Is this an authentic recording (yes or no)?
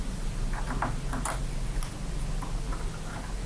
yes